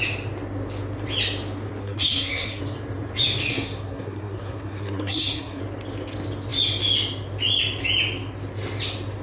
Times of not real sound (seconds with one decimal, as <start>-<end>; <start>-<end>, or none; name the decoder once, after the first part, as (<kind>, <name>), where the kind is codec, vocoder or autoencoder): 1.8-2.6 (codec, SNAC); 3.5-5.6